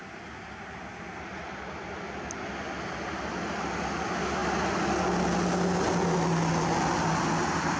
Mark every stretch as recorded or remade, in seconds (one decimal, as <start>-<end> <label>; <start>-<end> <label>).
0.0-7.8 recorded